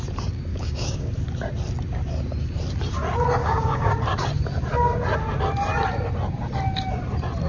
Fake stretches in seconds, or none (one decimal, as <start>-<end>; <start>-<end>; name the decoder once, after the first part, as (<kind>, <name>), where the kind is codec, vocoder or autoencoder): 0.5-1.1 (codec, DAC); 3.4-3.9